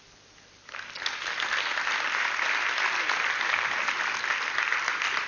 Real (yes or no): yes